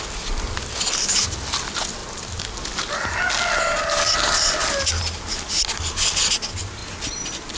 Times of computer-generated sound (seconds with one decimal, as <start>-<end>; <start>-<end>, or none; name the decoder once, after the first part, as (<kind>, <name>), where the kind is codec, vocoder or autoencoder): none